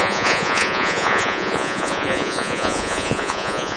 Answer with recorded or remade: remade